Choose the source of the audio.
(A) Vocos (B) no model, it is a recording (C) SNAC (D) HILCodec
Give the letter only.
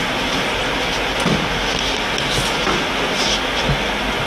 B